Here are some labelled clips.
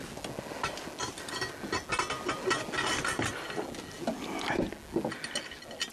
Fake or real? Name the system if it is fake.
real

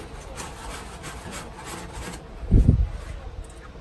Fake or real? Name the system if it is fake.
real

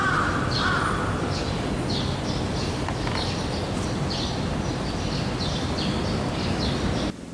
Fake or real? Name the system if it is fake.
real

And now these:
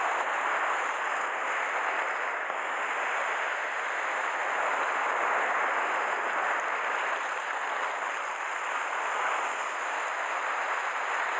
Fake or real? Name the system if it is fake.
real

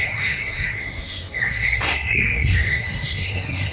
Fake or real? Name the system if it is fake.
fake, codec, SNAC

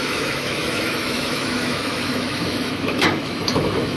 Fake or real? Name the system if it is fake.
fake, autoencoder, DAC-VAE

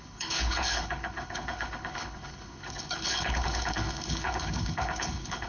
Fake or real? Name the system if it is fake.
fake, codec, HILCodec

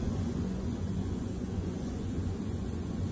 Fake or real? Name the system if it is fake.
fake, vocoder, Vocos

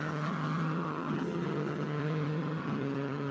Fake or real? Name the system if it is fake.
fake, vocoder, HiFi-GAN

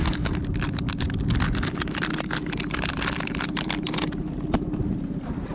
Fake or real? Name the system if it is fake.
real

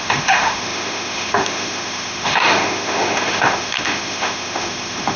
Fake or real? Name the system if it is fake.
fake, autoencoder, DAC-VAE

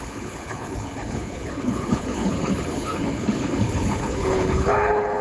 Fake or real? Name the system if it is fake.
fake, codec, HILCodec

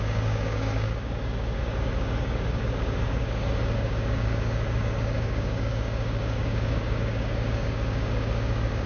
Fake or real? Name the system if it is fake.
fake, codec, DAC